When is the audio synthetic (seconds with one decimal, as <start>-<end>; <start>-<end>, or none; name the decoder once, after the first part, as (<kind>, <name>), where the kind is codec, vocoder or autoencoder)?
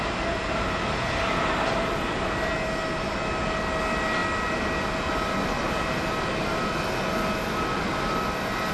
none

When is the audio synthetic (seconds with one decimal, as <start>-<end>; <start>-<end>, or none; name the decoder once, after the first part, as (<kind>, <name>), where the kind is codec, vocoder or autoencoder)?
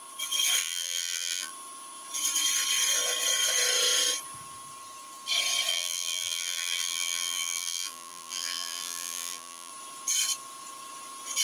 0.6-1.5 (vocoder, BigVGAN v2); 5.7-9.7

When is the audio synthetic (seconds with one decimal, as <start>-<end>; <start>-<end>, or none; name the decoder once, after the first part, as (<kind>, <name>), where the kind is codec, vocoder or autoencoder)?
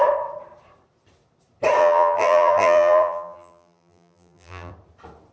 1.8-4.7 (vocoder, BigVGAN v2)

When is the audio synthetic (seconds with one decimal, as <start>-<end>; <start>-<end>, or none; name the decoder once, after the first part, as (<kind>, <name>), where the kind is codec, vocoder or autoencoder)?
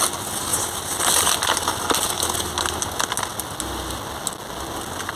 none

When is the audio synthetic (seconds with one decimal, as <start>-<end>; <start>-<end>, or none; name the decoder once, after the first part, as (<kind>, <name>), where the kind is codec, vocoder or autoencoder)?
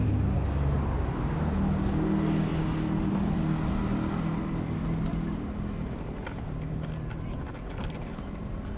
none